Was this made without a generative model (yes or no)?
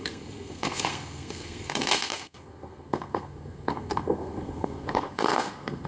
no